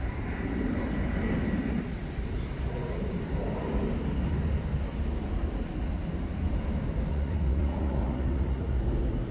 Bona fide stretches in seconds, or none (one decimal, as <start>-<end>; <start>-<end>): 0.0-7.1; 8.8-9.3